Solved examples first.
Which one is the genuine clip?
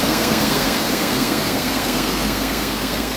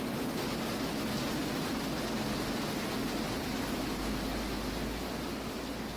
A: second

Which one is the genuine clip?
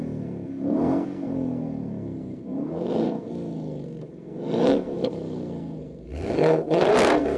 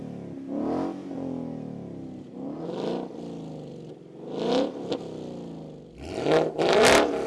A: second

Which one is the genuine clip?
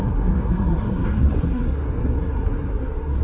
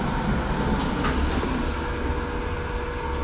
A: second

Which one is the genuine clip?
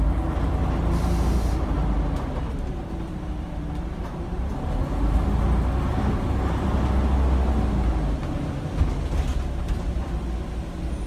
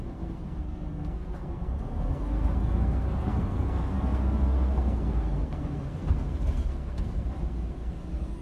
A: first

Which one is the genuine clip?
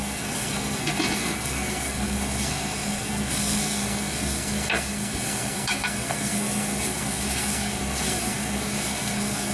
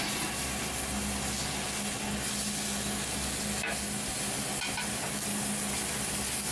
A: second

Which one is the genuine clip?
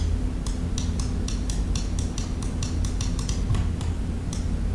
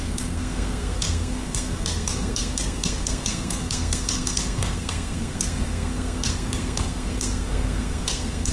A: first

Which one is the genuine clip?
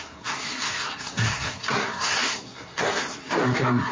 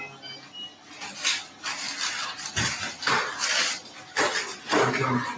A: second